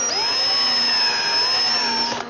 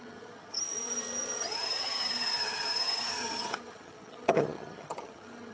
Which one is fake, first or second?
second